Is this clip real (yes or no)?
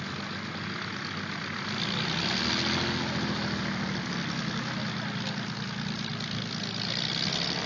yes